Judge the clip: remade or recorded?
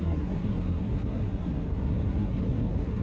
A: remade